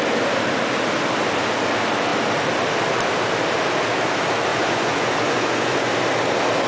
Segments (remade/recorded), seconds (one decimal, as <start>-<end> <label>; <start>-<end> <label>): 0.0-4.5 recorded; 4.5-5.9 remade; 5.9-6.7 recorded